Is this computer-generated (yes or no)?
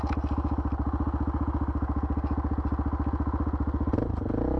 no